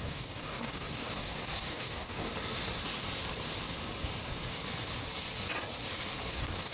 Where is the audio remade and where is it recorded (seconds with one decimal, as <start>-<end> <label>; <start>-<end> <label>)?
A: 0.0-2.3 remade; 2.3-6.3 recorded; 6.3-6.7 remade

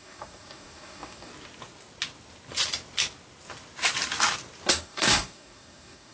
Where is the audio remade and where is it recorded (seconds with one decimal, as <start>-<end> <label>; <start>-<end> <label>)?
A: 0.0-1.3 remade; 1.3-4.7 recorded; 4.7-6.1 remade

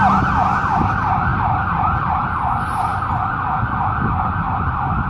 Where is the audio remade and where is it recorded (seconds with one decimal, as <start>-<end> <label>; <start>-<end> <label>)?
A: 0.0-5.1 recorded

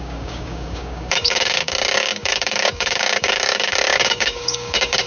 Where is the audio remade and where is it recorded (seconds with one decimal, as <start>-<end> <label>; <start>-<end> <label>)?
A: 0.0-5.1 remade

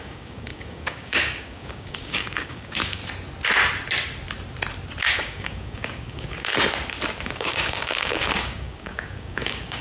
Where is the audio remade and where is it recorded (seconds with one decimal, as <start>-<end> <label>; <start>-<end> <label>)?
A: 0.0-3.0 remade; 3.0-5.0 recorded; 5.0-6.5 remade; 6.5-7.2 recorded; 7.2-9.8 remade

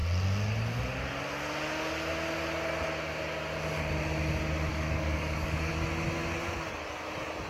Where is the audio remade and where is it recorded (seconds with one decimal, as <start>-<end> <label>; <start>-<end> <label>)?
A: 0.0-4.7 recorded; 4.7-5.7 remade; 5.7-7.5 recorded